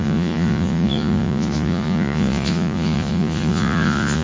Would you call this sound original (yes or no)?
no